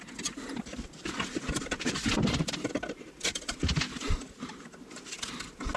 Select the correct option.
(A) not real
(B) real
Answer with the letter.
B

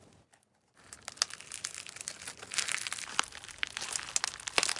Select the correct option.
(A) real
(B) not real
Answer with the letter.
A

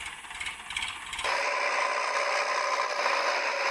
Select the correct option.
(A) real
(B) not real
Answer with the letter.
A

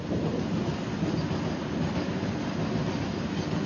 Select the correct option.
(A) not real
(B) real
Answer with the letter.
B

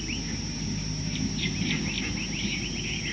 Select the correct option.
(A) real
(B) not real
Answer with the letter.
A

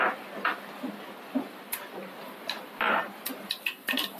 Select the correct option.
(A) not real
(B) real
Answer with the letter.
B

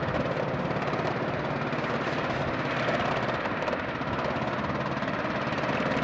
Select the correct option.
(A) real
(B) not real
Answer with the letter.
A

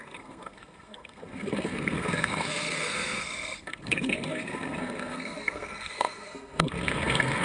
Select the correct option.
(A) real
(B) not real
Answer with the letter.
B